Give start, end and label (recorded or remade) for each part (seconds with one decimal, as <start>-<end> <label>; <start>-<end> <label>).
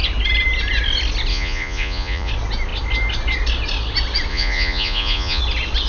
0.0-1.3 recorded; 1.3-2.3 remade; 2.3-4.3 recorded; 4.3-5.4 remade; 5.4-5.9 recorded